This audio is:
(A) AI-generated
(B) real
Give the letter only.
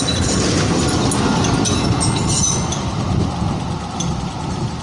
B